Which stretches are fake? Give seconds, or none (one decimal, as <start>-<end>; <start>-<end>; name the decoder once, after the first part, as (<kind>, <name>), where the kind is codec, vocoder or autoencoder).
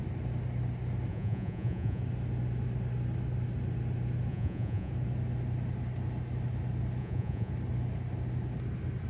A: 1.1-2.0 (vocoder, Vocos); 4.3-4.9; 7.0-7.5